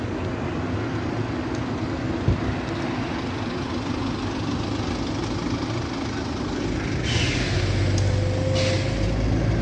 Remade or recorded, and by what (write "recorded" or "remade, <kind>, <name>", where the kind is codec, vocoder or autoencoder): recorded